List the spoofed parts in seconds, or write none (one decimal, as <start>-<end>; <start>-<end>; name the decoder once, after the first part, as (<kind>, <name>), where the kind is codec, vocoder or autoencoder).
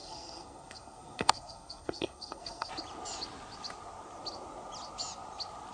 0.0-2.7 (codec, SNAC)